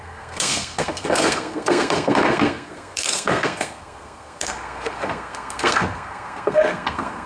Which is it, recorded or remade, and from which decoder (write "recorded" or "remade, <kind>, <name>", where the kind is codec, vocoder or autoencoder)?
remade, codec, SNAC